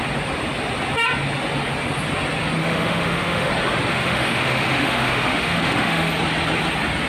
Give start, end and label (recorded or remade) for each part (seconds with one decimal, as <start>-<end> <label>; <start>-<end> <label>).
0.0-2.6 recorded; 2.6-3.5 remade; 3.5-3.9 recorded; 3.9-6.1 remade; 6.1-7.1 recorded